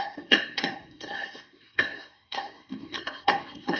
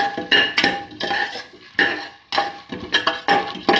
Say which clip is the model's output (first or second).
first